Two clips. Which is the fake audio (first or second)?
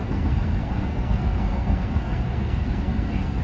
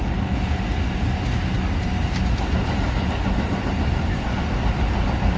first